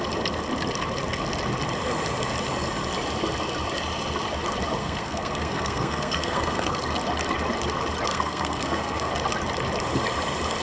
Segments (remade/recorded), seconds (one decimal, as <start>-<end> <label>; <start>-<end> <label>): 0.0-4.8 recorded; 4.8-6.8 remade; 6.8-8.1 recorded; 8.1-9.1 remade; 9.1-10.6 recorded